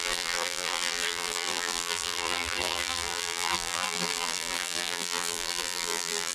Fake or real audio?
fake